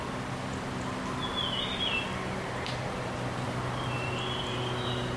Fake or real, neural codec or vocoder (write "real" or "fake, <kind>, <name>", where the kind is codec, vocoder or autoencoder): real